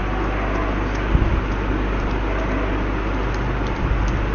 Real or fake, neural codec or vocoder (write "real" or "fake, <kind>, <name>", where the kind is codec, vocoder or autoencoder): real